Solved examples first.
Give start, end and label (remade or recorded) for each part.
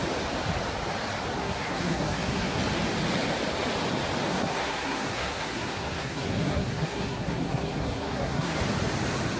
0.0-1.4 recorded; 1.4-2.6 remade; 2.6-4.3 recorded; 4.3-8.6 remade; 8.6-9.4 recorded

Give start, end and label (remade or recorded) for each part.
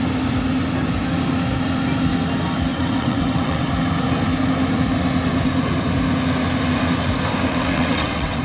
0.0-2.7 recorded; 2.7-3.7 remade; 3.7-7.5 recorded; 7.5-8.4 remade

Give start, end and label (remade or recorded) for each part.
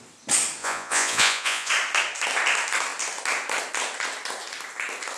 0.0-0.6 recorded; 0.6-1.7 remade; 1.7-5.2 recorded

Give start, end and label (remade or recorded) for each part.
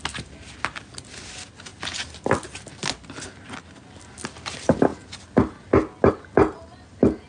0.0-7.3 recorded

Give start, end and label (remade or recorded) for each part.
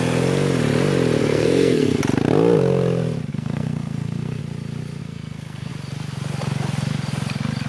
0.0-1.2 recorded; 1.2-2.0 remade; 2.0-3.3 recorded; 3.3-4.4 remade; 4.4-5.0 recorded; 5.0-5.7 remade; 5.7-7.7 recorded